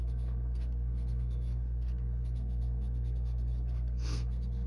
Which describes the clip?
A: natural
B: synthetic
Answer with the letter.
B